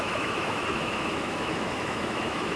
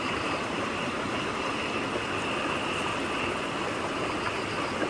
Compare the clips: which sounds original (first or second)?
second